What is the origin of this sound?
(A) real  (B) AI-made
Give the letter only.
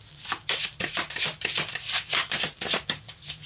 A